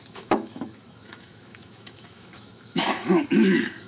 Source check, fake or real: fake